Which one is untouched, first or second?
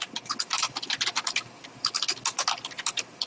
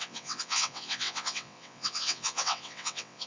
first